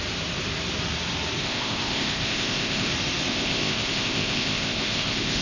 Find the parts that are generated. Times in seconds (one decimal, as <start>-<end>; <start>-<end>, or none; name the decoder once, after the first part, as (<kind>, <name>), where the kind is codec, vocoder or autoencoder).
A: 1.4-2.9 (codec, ZipCodec); 3.3-5.4